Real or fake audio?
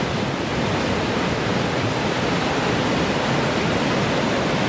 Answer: real